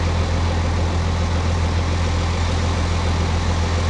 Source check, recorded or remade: recorded